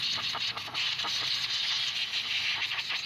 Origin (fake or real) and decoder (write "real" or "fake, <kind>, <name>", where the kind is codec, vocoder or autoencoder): real